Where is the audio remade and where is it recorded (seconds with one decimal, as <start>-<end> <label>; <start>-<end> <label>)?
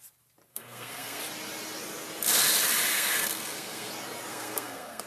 0.0-0.5 recorded; 0.5-1.2 remade; 1.2-2.9 recorded; 2.9-3.9 remade; 3.9-4.3 recorded; 4.3-5.1 remade